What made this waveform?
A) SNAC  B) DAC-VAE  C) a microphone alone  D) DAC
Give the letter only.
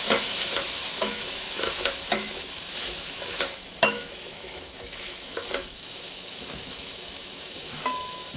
B